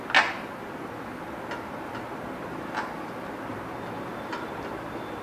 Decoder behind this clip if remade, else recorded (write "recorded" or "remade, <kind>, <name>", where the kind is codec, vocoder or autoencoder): recorded